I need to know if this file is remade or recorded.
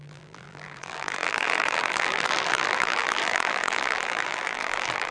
remade